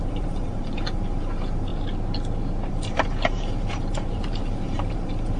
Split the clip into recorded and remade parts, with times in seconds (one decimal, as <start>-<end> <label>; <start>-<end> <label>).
0.0-1.7 remade; 1.7-2.7 recorded; 2.7-5.4 remade